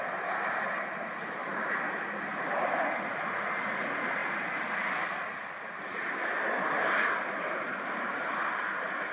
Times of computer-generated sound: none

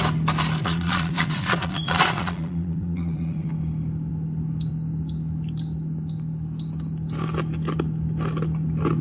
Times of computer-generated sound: 0.6-3.5

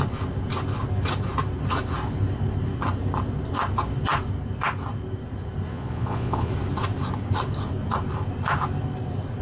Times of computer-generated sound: 5.7-6.5